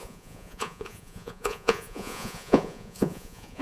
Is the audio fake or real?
fake